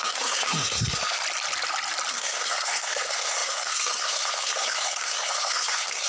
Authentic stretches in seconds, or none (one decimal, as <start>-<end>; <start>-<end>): 1.2-2.1